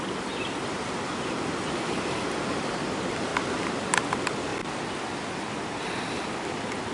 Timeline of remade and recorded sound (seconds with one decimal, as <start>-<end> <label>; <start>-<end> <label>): 0.0-6.9 recorded